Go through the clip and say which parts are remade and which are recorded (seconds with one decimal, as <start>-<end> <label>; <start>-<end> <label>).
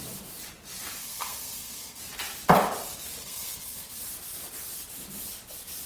0.0-1.0 recorded; 1.0-2.0 remade; 2.0-3.2 recorded; 3.2-4.0 remade; 4.0-5.9 recorded